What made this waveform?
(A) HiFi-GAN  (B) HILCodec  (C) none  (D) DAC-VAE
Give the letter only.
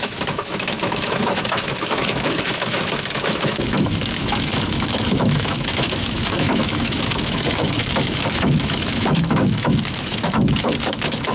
D